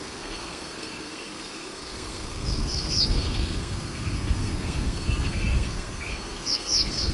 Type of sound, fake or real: fake